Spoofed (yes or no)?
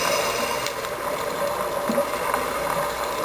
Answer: no